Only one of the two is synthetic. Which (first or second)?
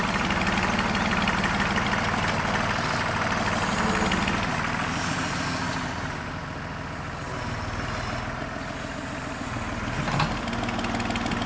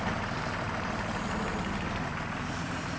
second